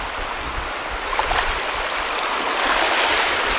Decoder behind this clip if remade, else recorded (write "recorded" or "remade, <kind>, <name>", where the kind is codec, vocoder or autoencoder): recorded